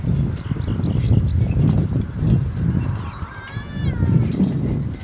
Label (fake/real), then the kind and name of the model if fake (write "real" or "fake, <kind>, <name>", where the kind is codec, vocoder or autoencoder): real